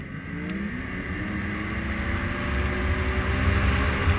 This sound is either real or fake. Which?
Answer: real